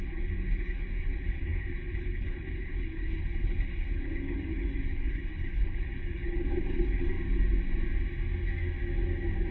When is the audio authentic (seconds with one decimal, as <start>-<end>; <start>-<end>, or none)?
7.1-9.5